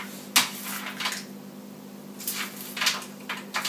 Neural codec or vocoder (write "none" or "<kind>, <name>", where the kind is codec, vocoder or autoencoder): none